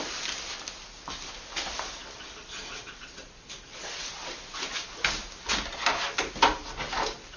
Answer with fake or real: real